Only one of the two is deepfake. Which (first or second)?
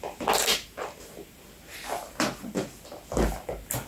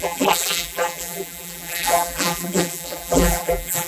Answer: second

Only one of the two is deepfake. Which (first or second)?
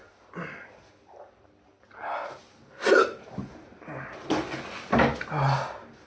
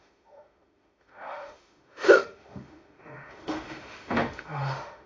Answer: second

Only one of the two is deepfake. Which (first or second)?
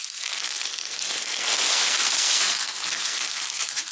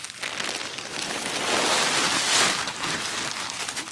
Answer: first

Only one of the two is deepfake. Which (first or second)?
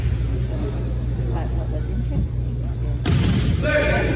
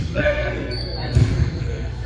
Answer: second